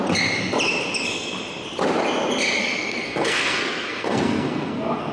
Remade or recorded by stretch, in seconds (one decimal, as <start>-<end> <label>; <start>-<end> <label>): 0.0-2.6 recorded; 2.6-5.1 remade